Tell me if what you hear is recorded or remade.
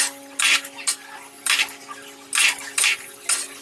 recorded